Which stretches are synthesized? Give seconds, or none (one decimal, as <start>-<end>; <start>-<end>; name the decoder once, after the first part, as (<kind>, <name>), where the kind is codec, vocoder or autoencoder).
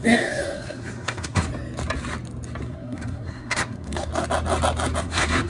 0.0-1.5 (codec, SNAC); 2.6-4.1; 5.0-5.5